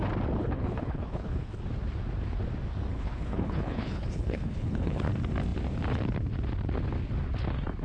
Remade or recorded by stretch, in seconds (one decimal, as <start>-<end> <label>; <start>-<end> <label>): 0.0-0.4 recorded; 0.4-1.6 remade; 1.6-2.9 recorded; 2.9-5.1 remade; 5.1-7.8 recorded